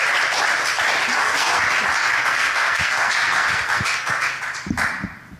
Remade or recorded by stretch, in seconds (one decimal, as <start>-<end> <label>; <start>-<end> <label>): 0.0-1.1 recorded; 1.1-1.6 remade; 1.6-2.0 recorded; 2.0-4.4 remade; 4.4-5.4 recorded